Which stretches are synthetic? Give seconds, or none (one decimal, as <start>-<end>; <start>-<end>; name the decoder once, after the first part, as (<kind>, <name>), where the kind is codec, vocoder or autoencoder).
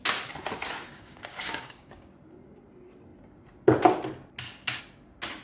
0.9-2.1 (codec, DAC)